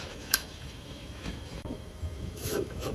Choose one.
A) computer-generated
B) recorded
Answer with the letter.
A